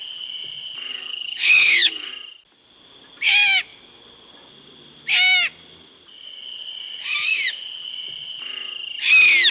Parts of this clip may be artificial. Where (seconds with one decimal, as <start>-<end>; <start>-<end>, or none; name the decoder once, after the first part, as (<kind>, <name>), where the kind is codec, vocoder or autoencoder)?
0.9-2.1 (codec, HILCodec)